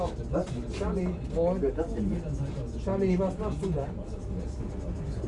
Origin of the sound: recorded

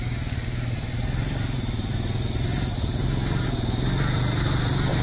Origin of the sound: remade